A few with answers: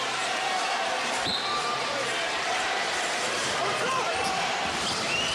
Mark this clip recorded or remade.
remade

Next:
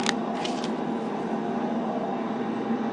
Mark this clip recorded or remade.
recorded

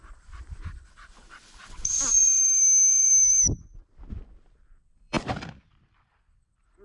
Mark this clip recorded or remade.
remade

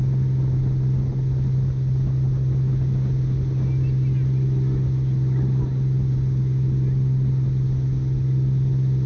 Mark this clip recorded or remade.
recorded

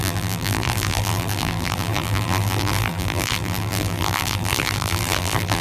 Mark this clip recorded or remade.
remade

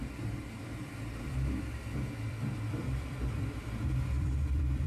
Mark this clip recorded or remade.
remade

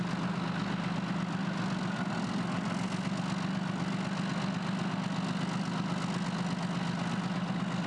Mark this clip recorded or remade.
recorded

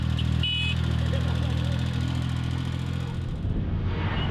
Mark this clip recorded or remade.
recorded